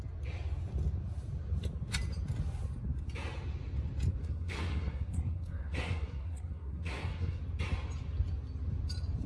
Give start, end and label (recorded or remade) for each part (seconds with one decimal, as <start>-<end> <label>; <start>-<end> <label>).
0.0-4.2 recorded; 4.2-7.4 remade; 7.4-9.3 recorded